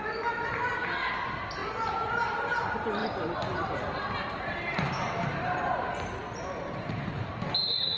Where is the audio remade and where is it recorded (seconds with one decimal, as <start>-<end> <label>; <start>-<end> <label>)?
0.0-3.0 recorded; 3.0-5.9 remade; 5.9-8.0 recorded